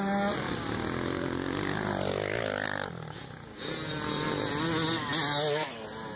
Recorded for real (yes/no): yes